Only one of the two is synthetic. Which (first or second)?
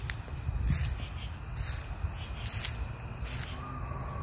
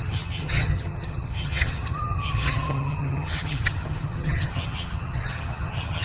second